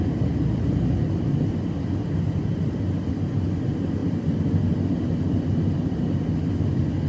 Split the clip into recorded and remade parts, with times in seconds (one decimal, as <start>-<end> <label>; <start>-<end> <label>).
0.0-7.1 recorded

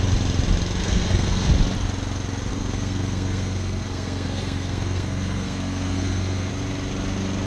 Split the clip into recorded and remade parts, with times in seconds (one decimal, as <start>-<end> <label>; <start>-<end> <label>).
0.0-0.8 recorded; 0.8-1.5 remade; 1.5-2.5 recorded; 2.5-6.5 remade; 6.5-7.5 recorded

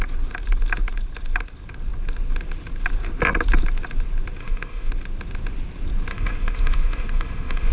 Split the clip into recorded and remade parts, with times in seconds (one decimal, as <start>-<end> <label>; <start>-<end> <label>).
0.0-4.4 recorded; 4.4-4.9 remade; 4.9-6.1 recorded; 6.1-7.7 remade

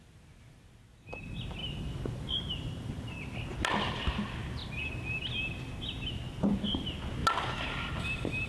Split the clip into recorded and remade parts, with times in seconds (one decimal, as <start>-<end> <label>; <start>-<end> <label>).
0.0-8.5 recorded

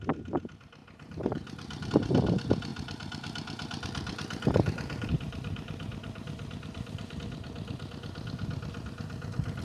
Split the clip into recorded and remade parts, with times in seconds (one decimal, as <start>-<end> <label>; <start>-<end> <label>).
0.0-0.8 recorded; 0.8-1.9 remade; 1.9-2.7 recorded; 2.7-7.2 remade; 7.2-9.6 recorded

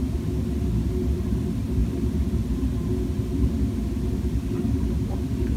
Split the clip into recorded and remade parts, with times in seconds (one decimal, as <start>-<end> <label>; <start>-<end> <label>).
0.0-5.6 recorded

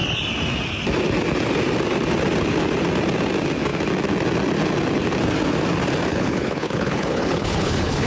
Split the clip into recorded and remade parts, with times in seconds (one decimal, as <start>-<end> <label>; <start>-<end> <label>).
0.0-6.1 recorded; 6.1-8.1 remade